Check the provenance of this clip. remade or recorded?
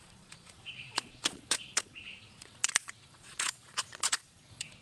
remade